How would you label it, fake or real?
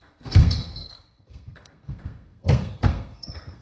fake